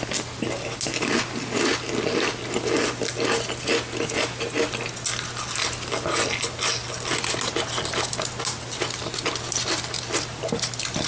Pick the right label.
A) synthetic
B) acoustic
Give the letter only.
B